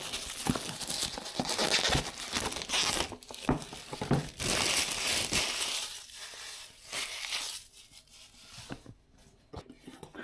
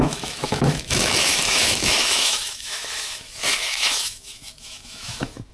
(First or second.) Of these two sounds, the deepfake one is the second